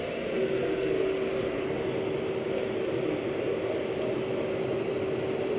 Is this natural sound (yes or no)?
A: yes